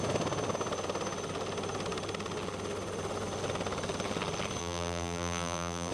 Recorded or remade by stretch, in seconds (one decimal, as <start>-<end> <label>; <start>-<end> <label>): 0.0-4.6 recorded; 4.6-5.9 remade